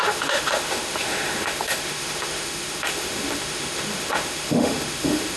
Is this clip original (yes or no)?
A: no